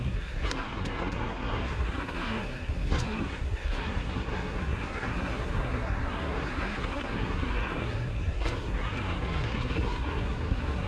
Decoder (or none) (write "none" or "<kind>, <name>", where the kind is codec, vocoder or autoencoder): codec, SNAC